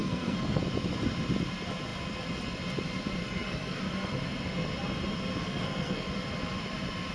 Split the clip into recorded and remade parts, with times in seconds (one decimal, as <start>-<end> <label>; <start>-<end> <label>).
0.0-0.6 remade; 0.6-3.2 recorded; 3.2-3.8 remade; 3.8-5.4 recorded; 5.4-6.1 remade; 6.1-7.1 recorded